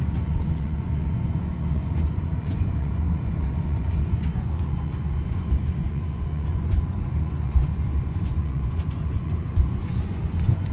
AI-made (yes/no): yes